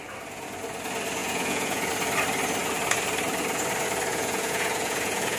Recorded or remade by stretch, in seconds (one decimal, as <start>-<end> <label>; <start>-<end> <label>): 0.0-1.2 recorded; 1.2-1.9 remade; 1.9-4.1 recorded; 4.1-5.4 remade